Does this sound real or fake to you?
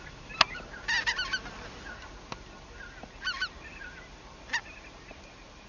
real